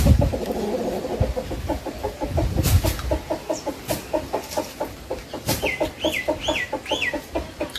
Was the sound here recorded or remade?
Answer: recorded